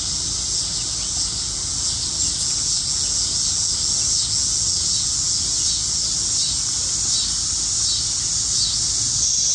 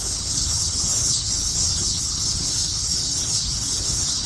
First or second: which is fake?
second